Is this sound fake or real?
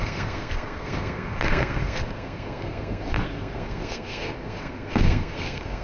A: fake